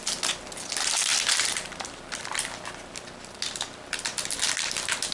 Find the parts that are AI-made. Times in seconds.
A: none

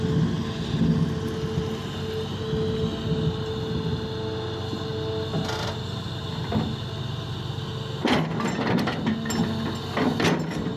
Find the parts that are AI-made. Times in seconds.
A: none

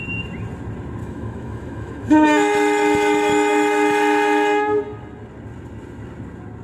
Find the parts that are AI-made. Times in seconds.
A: 1.0-4.8 (autoencoder, DAC-VAE)

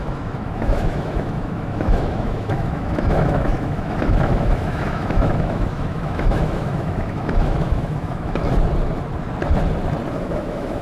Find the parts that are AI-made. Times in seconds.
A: 0.0-8.4 (autoencoder, DAC-VAE); 10.1-10.8

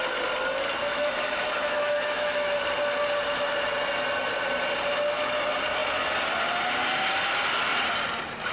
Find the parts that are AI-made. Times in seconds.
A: 0.9-2.6 (autoencoder, DAC-VAE)